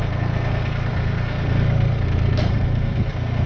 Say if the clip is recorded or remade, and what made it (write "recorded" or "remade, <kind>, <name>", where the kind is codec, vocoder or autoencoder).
remade, codec, SNAC